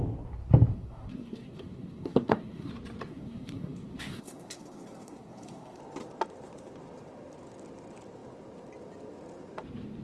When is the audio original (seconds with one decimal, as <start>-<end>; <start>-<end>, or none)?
0.0-0.7; 2.7-3.1; 5.8-10.0